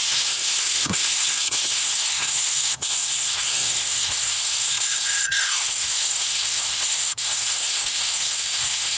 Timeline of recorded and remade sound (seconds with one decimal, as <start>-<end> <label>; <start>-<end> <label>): 0.0-9.0 remade